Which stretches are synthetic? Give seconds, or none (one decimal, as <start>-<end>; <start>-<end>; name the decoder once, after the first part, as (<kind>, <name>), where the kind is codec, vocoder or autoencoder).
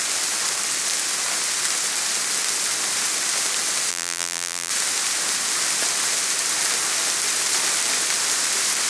3.9-4.7 (vocoder, BigVGAN v2)